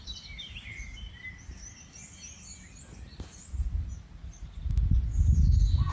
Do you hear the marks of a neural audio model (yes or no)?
no